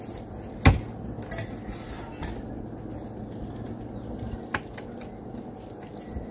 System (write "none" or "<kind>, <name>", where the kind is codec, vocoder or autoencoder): none